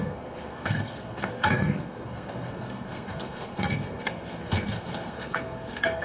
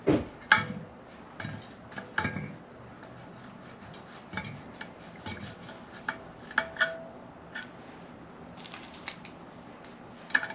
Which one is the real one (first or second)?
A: second